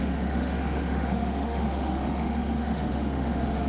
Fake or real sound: fake